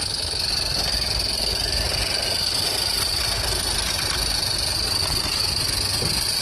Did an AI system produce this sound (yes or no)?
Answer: no